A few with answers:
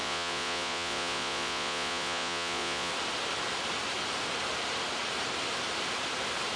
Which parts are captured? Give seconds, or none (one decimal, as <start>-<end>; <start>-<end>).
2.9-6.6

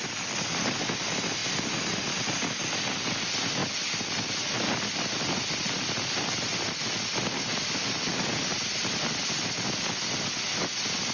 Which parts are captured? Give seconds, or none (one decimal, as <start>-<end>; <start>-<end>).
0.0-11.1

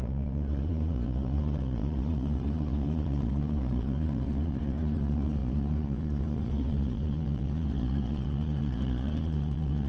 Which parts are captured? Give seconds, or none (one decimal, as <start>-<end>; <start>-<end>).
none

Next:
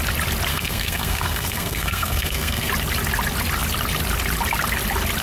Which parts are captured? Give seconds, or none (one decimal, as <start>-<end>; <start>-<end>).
0.0-0.5; 2.7-5.2

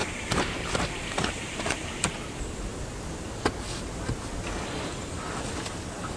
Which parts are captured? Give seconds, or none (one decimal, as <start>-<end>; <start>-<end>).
0.8-1.4; 2.1-6.2

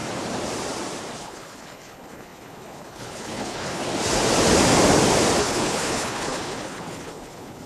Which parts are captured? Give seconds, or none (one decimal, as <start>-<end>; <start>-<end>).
0.0-1.2; 3.8-5.4